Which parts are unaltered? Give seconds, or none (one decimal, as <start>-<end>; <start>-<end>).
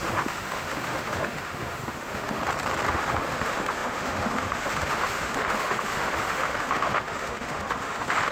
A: 2.4-2.9